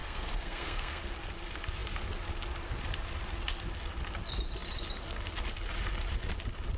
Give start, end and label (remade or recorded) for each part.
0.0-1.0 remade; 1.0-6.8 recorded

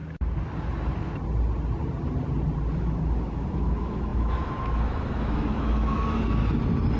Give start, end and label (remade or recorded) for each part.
0.0-2.7 recorded; 2.7-6.4 remade; 6.4-7.0 recorded

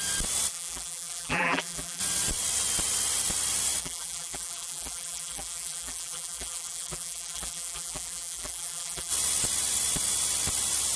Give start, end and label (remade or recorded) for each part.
0.0-0.5 recorded; 0.5-2.0 remade; 2.0-3.8 recorded; 3.8-9.1 remade; 9.1-11.0 recorded

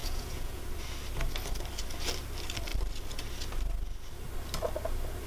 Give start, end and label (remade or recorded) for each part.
0.0-0.6 remade; 0.6-5.3 recorded